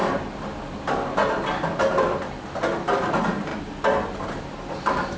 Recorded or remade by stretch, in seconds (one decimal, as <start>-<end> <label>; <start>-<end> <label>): 0.0-5.2 recorded